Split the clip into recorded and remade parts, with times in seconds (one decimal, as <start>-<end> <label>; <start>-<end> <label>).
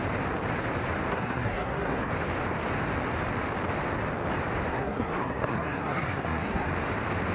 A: 0.0-1.1 recorded; 1.1-2.1 remade; 2.1-4.7 recorded; 4.7-6.7 remade; 6.7-7.3 recorded